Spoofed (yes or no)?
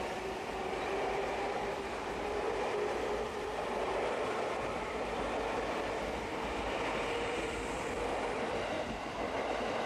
yes